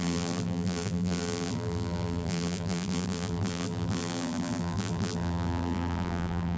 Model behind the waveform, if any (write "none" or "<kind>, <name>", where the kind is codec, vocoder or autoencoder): vocoder, BigVGAN v2